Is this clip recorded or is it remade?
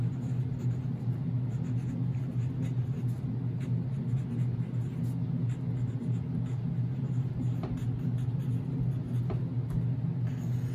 recorded